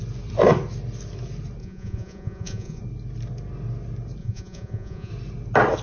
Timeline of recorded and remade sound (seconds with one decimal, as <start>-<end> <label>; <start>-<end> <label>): 0.0-1.6 recorded; 1.6-2.8 remade; 2.8-4.2 recorded; 4.2-5.1 remade; 5.1-5.8 recorded